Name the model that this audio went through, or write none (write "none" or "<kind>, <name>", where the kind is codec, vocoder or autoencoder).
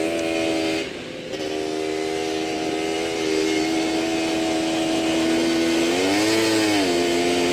none